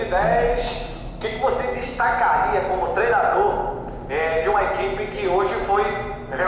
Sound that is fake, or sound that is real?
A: real